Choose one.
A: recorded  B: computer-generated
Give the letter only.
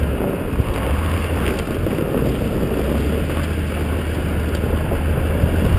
A